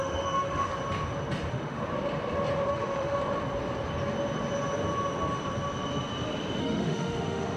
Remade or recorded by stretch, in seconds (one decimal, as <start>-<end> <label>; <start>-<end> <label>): 0.0-0.7 remade; 0.7-1.5 recorded; 1.5-1.9 remade; 1.9-2.7 recorded; 2.7-3.2 remade; 3.2-6.6 recorded; 6.6-7.6 remade